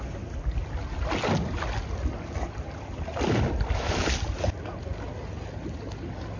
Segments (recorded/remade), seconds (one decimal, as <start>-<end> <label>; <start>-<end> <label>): 0.0-6.4 recorded